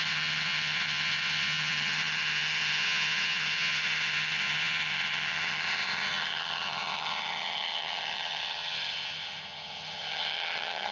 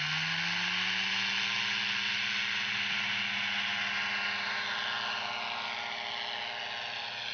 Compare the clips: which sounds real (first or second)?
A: second